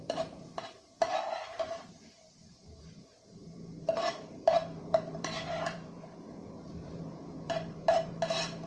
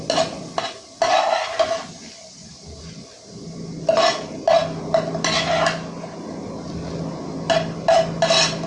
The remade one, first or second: first